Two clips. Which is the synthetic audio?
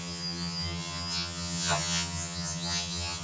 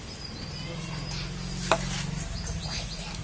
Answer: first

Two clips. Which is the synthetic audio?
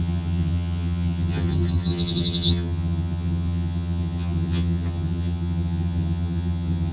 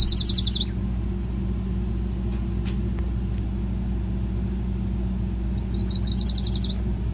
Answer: first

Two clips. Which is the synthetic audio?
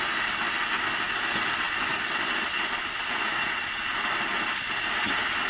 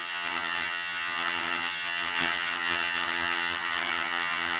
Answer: second